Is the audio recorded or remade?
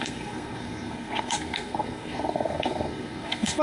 remade